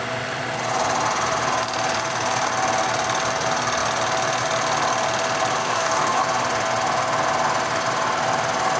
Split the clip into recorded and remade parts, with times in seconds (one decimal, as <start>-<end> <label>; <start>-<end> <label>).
0.0-5.6 recorded; 5.6-6.2 remade; 6.2-8.8 recorded